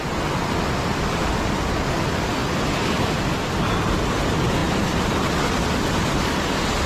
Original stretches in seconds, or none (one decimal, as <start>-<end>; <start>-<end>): 0.0-6.9